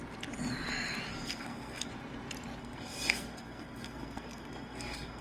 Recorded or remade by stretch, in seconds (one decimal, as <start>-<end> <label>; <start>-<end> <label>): 0.0-1.1 recorded; 1.1-1.9 remade; 1.9-2.6 recorded; 2.6-5.2 remade